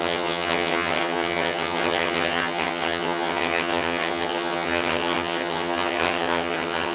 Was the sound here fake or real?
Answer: fake